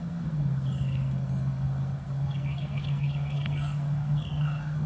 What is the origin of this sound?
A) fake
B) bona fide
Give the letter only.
A